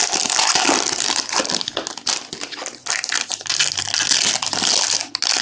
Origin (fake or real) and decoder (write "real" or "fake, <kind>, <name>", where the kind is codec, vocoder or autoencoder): real